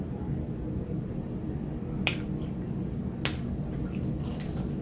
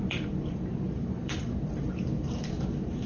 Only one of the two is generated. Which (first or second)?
second